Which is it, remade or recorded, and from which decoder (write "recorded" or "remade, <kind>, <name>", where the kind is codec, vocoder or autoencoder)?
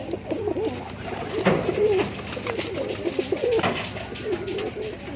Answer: recorded